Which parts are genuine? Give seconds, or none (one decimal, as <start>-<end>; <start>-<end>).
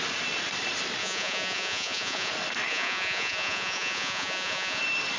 0.0-1.0; 2.3-2.7; 4.8-5.2